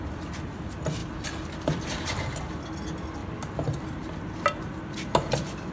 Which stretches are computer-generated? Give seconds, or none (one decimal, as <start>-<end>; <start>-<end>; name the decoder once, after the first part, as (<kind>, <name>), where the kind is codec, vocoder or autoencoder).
none